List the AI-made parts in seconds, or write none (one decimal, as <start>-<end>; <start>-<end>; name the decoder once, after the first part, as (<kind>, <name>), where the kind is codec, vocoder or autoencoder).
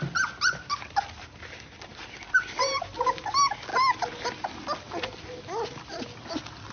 none